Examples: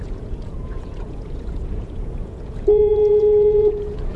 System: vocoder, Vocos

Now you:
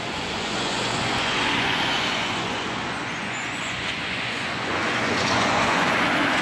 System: vocoder, Vocos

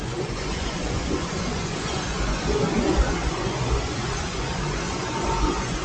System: vocoder, Vocos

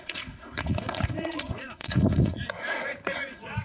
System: vocoder, Vocos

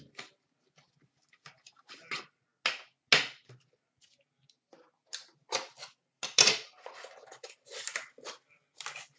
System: none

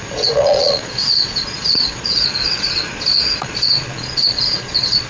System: vocoder, Vocos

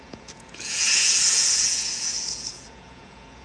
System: vocoder, Vocos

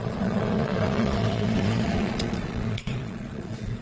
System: vocoder, Vocos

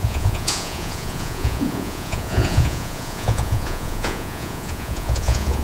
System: vocoder, Vocos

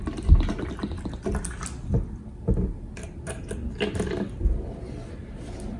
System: none